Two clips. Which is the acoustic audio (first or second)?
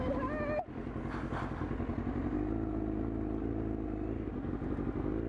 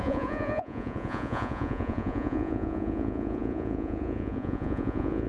first